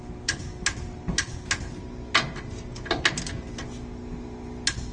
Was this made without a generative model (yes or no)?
yes